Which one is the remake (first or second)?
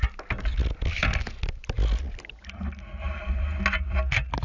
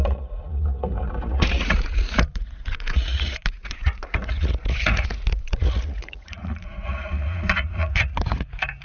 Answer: second